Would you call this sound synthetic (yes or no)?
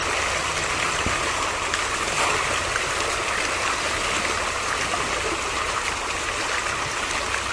no